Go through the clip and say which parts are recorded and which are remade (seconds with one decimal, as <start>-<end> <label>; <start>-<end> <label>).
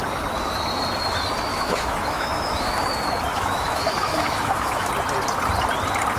0.0-1.5 recorded; 1.5-2.7 remade; 2.7-3.3 recorded; 3.3-4.9 remade; 4.9-6.2 recorded